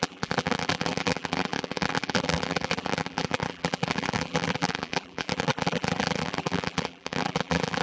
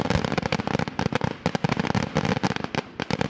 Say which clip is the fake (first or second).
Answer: first